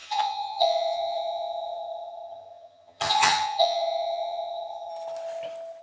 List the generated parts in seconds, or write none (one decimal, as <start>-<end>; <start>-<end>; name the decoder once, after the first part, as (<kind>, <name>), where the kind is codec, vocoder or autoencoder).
0.0-4.9 (vocoder, HiFi-GAN)